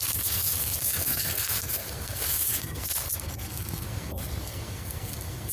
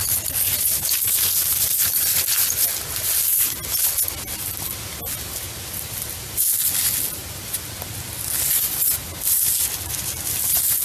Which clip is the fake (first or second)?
first